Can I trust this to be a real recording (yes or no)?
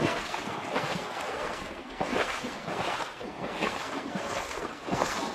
no